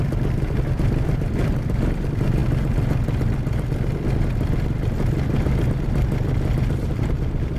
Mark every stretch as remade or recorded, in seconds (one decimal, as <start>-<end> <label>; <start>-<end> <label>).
0.0-2.4 remade; 2.4-7.0 recorded; 7.0-7.6 remade